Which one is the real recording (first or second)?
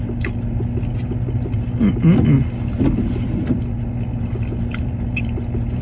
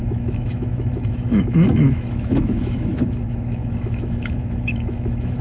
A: first